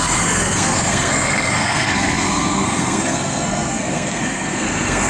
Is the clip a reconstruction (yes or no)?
yes